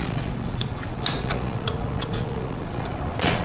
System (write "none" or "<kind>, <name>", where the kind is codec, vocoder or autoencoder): vocoder, Vocos